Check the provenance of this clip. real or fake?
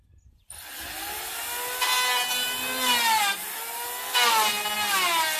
real